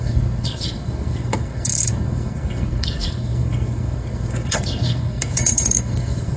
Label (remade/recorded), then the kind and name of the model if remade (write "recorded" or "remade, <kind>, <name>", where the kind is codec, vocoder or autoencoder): remade, codec, SNAC